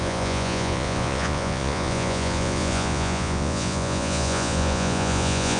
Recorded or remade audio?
remade